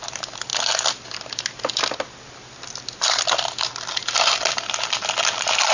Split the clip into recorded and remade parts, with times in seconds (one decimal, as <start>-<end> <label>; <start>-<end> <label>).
0.0-5.7 recorded